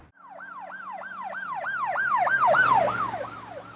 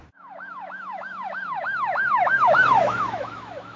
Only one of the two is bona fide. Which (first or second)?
first